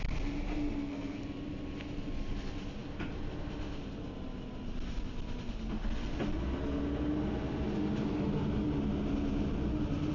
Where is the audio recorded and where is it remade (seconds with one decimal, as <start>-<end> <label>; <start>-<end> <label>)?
0.0-0.5 recorded; 0.5-1.2 remade; 1.2-10.1 recorded